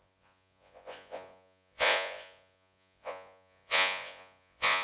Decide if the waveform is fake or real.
fake